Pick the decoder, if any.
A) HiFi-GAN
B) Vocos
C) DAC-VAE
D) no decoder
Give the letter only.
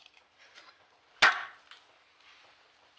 D